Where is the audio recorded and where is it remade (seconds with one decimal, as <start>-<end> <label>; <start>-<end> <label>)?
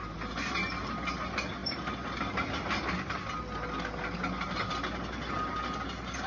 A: 0.0-6.3 recorded